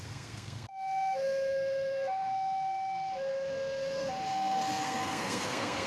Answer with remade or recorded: remade